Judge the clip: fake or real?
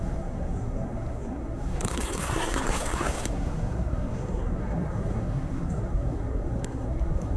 fake